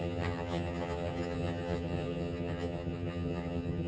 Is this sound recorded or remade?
remade